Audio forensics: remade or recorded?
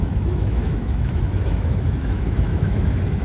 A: remade